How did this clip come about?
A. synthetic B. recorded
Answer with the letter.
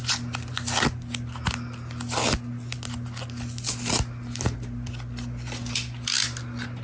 B